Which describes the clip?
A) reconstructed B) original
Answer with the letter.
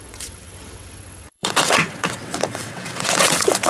A